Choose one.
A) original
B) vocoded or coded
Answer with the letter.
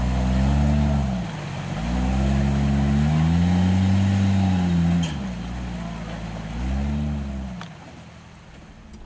A